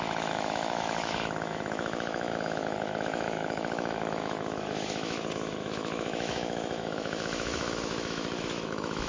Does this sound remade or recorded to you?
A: remade